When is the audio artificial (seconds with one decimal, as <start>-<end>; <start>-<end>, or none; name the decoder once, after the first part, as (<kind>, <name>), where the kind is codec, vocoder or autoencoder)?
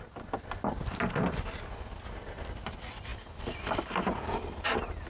none